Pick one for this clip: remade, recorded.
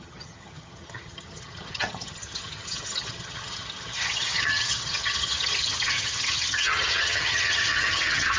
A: remade